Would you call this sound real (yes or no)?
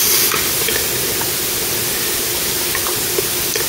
no